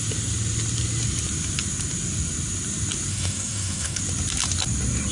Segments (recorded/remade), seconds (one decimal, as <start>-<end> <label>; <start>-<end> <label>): 0.0-3.1 recorded; 3.1-4.0 remade; 4.0-5.1 recorded